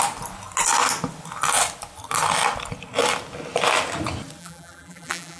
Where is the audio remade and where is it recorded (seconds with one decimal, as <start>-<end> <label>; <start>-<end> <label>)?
0.0-4.4 recorded; 4.4-5.4 remade